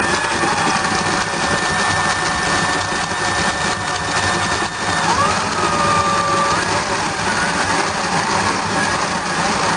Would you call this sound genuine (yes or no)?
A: yes